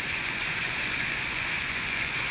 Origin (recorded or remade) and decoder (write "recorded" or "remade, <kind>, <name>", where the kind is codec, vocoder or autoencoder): remade, vocoder, Vocos